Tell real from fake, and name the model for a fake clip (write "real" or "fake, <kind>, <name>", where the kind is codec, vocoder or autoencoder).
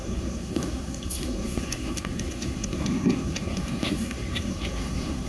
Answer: fake, codec, SNAC